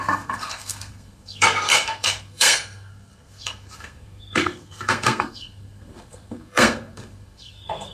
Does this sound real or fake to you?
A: fake